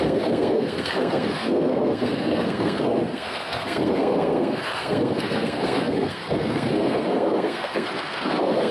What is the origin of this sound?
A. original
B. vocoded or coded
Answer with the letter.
B